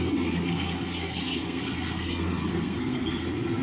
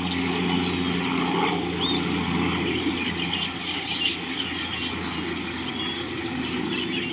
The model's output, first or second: first